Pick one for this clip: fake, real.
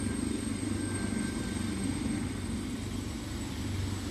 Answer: real